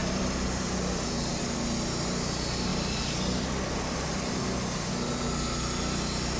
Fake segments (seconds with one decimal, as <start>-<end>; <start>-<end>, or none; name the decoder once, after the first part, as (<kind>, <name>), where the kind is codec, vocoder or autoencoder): 0.0-1.4 (vocoder, BigVGAN v2); 2.7-4.4